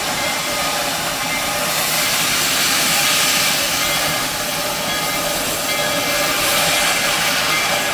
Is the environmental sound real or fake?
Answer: real